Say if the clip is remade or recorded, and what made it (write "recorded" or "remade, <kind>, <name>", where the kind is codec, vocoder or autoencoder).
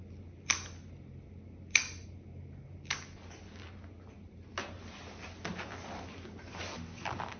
recorded